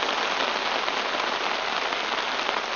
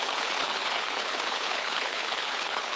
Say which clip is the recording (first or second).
first